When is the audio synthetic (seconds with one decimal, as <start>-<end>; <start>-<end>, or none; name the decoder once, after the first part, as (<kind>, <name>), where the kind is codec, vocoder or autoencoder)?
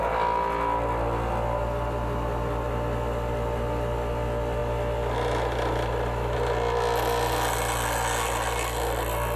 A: none